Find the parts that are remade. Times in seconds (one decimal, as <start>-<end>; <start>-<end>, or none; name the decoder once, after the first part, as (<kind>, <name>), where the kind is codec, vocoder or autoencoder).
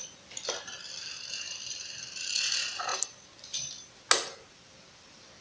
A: none